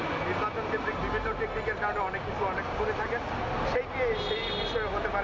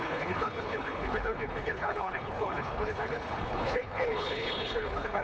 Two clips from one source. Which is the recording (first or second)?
first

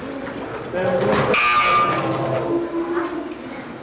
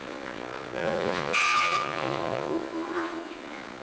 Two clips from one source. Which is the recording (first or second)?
first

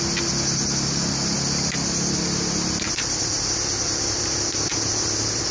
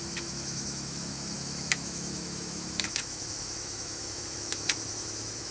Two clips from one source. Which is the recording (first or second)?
first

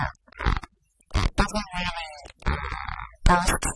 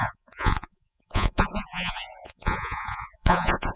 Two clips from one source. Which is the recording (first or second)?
first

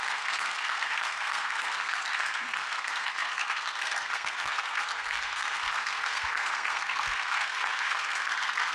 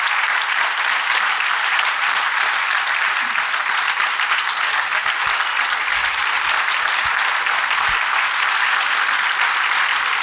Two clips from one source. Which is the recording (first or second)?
second